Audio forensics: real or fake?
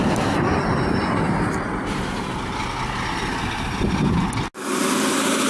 real